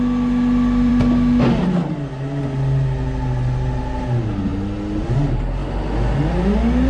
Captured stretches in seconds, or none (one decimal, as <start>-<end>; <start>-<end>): 0.0-6.9